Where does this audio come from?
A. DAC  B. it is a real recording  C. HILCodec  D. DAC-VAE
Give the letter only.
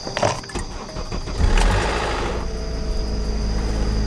B